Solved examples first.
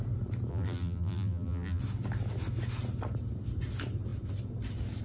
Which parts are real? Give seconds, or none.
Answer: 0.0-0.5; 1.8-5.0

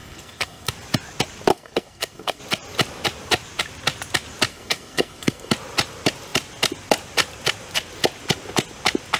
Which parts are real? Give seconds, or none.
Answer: 0.7-1.5; 2.4-4.5; 5.5-9.2

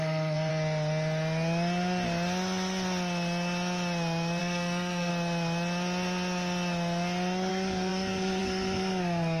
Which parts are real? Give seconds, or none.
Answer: 0.5-4.4; 5.1-7.5